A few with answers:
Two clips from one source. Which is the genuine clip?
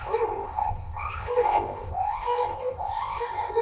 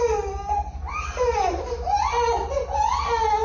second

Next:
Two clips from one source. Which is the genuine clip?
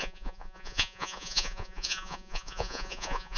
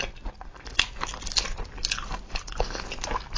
second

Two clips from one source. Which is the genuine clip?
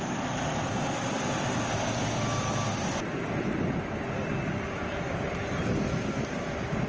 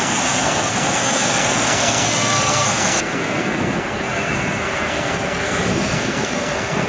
first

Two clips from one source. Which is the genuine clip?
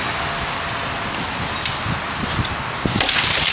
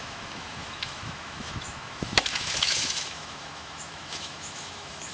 first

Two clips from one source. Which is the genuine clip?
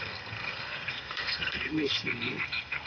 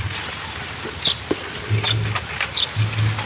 second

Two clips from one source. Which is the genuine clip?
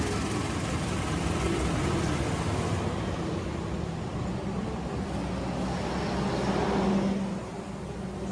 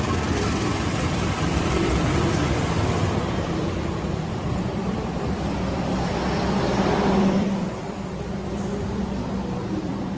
first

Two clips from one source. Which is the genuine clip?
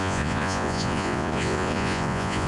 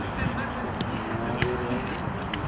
second